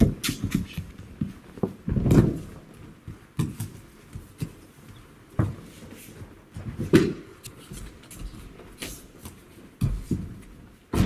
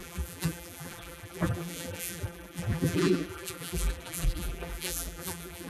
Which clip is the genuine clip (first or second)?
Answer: first